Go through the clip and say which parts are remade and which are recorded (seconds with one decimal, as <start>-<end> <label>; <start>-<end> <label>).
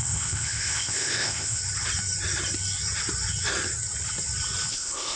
0.0-1.6 remade; 1.6-4.7 recorded; 4.7-5.2 remade